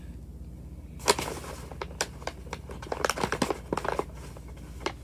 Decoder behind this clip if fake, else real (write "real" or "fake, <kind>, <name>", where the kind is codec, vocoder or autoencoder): real